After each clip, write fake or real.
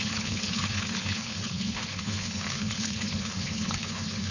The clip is fake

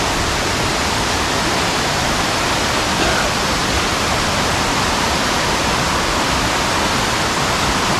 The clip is real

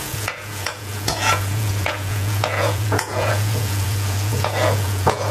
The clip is fake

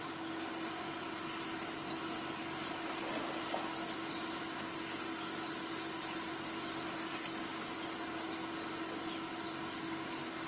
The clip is real